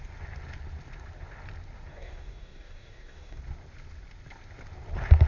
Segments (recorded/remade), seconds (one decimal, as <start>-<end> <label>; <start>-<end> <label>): 0.0-1.9 recorded; 1.9-3.4 remade; 3.4-5.3 recorded